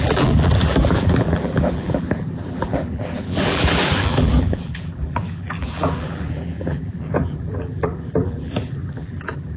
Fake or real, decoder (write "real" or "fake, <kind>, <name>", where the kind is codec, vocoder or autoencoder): fake, vocoder, BigVGAN v2